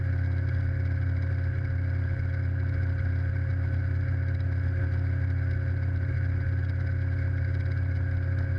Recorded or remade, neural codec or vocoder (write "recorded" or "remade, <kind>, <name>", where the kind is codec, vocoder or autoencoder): recorded